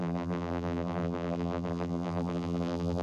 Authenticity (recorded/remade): remade